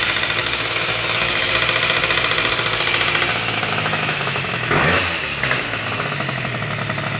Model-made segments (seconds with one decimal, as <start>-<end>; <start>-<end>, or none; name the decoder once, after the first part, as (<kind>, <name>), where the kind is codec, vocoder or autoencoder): 0.4-1.5 (autoencoder, DAC-VAE); 3.3-5.0